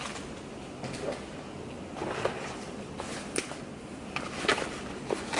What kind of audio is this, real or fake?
real